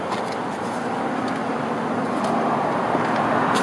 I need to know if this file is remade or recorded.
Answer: recorded